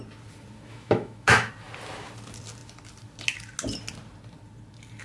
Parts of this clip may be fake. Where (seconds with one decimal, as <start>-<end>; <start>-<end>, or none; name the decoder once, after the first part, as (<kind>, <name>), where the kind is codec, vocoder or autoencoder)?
0.7-1.5 (autoencoder, DAC-VAE)

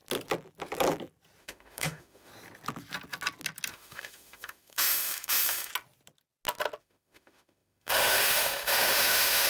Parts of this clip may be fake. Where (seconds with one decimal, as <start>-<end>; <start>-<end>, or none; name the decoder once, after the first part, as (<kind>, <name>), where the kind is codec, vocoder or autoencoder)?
1.4-2.3 (autoencoder, DAC-VAE); 3.7-5.7; 6.8-9.5